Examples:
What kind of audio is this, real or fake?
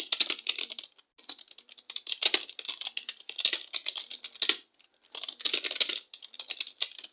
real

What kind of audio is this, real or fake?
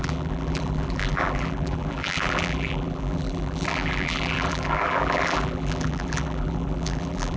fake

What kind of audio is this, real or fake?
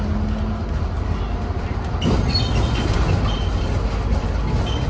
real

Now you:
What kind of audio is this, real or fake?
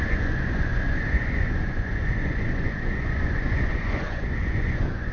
fake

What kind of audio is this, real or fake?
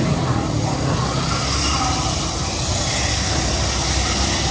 real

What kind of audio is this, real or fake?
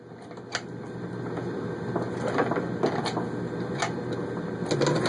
real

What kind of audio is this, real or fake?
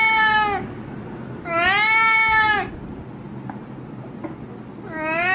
real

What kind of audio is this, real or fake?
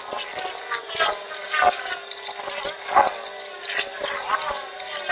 real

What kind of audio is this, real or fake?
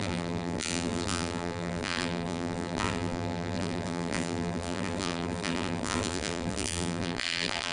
fake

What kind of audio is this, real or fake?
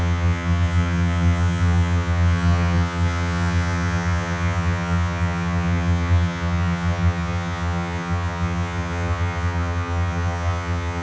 fake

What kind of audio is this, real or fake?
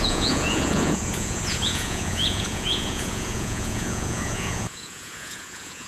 fake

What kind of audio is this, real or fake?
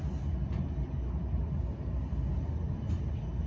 real